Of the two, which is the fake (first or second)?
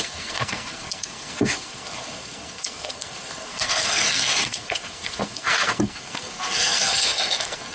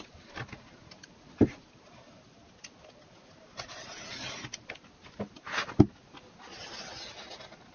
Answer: first